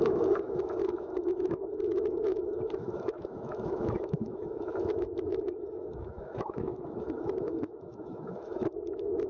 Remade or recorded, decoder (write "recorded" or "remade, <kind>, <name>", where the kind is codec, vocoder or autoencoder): remade, autoencoder, DAC-VAE